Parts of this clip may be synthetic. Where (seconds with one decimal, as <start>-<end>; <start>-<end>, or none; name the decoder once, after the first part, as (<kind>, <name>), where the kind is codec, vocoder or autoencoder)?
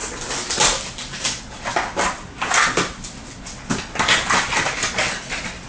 none